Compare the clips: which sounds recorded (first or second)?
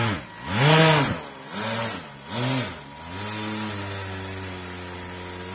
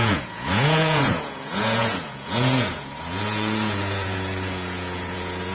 first